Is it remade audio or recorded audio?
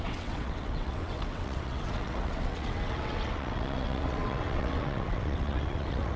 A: remade